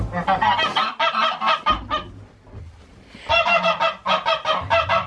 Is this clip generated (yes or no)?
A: no